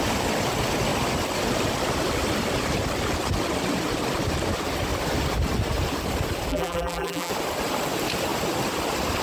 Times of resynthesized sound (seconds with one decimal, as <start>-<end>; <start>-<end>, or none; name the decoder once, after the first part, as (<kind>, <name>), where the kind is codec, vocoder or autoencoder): 6.5-7.3 (vocoder, BigVGAN v2)